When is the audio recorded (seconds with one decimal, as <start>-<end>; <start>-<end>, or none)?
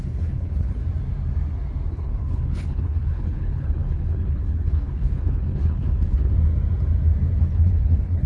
0.8-1.9; 6.3-7.4